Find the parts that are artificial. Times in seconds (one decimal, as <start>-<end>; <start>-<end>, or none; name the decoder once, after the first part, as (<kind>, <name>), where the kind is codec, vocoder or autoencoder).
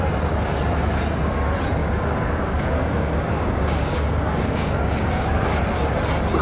1.8-5.6 (codec, DAC)